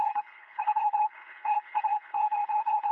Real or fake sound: fake